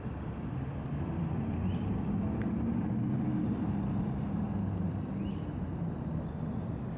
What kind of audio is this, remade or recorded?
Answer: remade